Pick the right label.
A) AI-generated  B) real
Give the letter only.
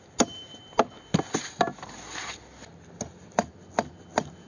B